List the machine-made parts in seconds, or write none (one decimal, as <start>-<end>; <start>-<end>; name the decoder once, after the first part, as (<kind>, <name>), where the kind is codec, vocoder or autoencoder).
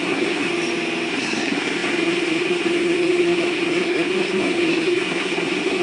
0.0-0.5 (codec, SNAC); 1.1-5.8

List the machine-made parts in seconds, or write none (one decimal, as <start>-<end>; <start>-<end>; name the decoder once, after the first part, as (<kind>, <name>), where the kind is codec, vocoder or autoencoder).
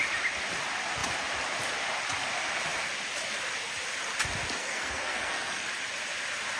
4.6-5.7 (codec, SNAC)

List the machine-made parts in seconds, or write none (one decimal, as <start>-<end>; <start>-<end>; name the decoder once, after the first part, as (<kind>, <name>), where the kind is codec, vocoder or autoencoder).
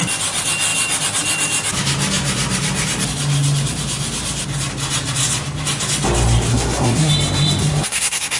6.5-7.1 (codec, SNAC); 7.6-8.4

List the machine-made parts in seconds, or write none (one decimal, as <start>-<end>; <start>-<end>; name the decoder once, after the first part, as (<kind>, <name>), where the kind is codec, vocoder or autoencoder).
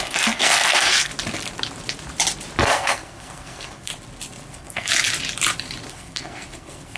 0.0-1.1 (codec, SNAC); 2.6-3.9; 4.5-4.9; 5.9-7.0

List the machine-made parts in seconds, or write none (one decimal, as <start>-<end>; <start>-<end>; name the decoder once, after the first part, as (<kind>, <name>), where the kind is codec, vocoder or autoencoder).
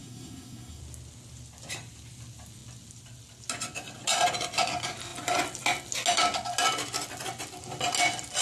0.0-0.8 (codec, SNAC)